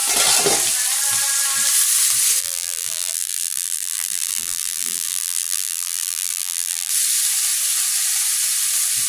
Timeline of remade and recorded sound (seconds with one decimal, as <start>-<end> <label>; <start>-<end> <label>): 0.0-2.4 recorded; 2.4-6.9 remade; 6.9-9.1 recorded